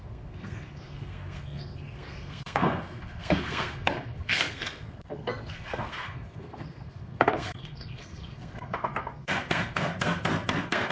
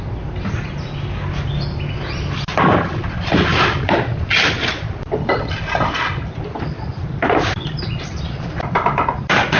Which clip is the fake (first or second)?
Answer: first